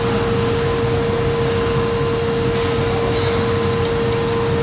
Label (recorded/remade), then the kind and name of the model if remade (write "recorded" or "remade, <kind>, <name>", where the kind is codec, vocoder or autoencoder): recorded